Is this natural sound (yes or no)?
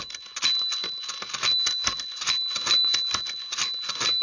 yes